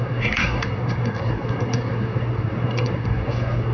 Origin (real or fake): fake